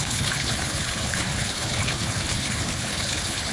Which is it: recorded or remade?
remade